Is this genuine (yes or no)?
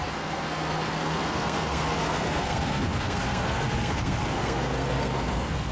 no